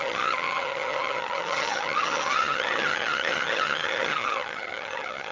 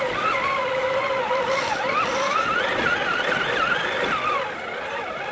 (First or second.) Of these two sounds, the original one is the second